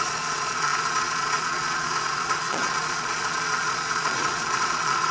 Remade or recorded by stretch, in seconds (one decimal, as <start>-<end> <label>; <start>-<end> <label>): 0.0-5.1 remade